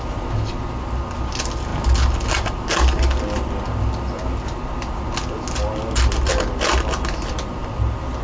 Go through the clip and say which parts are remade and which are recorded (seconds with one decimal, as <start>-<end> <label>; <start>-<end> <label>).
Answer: 0.0-8.2 recorded